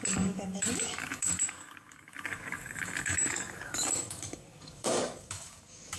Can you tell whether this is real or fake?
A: fake